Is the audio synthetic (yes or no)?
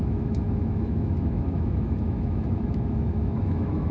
yes